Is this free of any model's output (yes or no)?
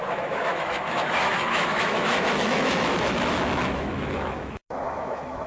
no